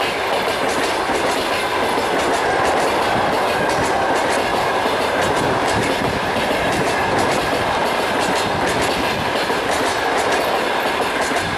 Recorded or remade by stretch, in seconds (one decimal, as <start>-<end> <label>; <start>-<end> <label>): 0.0-4.5 recorded; 4.5-7.2 remade; 7.2-11.6 recorded